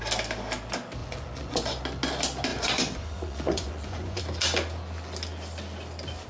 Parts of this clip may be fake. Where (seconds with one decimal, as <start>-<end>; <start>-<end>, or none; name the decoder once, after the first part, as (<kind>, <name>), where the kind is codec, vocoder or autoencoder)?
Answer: 1.0-1.8 (vocoder, Vocos); 2.5-4.2